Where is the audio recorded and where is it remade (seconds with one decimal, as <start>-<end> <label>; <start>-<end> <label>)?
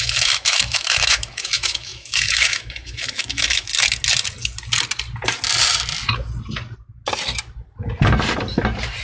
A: 0.0-3.7 remade; 3.7-9.0 recorded